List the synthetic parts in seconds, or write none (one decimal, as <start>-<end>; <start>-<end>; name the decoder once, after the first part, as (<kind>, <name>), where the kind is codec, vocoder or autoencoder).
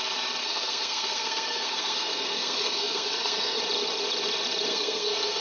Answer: 0.4-3.6 (codec, SNAC); 4.7-5.4